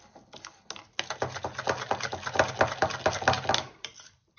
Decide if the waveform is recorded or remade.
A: recorded